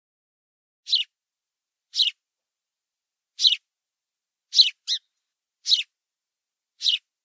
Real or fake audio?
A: real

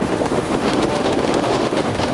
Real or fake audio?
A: fake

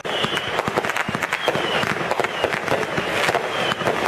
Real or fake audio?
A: real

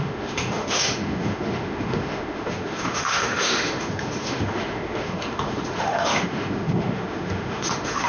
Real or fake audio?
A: fake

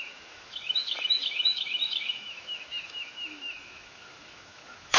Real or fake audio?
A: fake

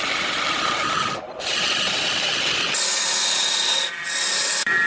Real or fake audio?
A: real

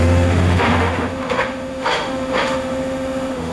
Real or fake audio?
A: fake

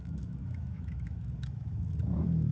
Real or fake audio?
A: fake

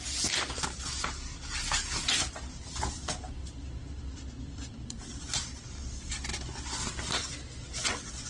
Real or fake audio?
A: real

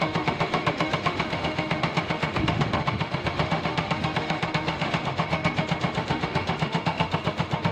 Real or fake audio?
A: fake